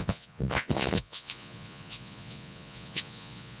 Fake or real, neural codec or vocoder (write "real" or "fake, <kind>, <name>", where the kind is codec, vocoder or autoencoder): fake, vocoder, Vocos